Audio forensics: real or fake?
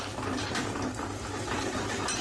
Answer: real